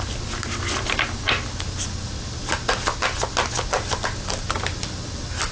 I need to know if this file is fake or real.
real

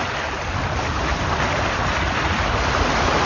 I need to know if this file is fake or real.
real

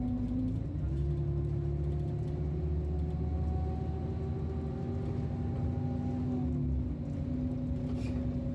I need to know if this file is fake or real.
real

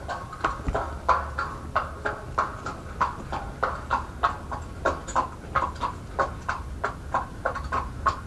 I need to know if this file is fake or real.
real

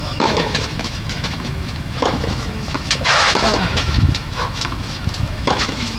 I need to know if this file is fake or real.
fake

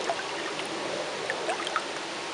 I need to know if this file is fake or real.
real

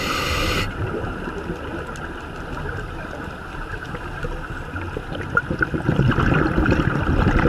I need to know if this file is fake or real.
real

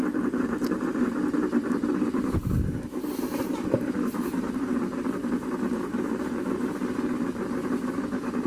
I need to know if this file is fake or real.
fake